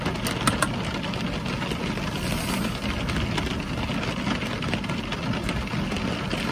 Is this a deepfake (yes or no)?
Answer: no